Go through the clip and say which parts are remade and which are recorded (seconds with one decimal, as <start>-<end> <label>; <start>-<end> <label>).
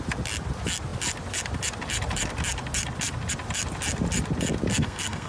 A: 0.0-4.7 recorded; 4.7-5.3 remade